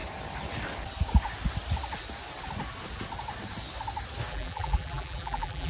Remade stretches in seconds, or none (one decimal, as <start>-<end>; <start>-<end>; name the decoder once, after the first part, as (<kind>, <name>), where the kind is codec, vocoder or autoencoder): 4.3-5.7 (vocoder, BigVGAN v2)